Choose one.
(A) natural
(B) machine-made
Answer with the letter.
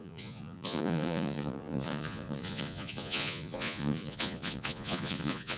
B